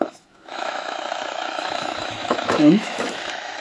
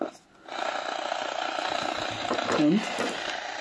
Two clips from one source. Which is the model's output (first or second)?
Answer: first